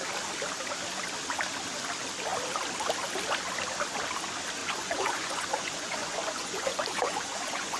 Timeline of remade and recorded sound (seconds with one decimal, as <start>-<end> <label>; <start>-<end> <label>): 0.0-4.6 recorded; 4.6-7.8 remade